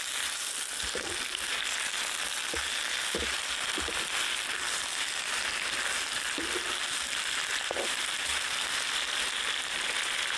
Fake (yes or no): no